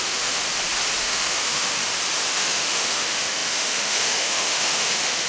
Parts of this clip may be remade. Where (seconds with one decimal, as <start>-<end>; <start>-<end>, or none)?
0.0-0.4; 1.0-1.8; 2.3-5.3